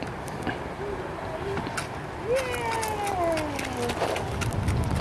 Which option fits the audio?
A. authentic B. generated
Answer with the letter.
A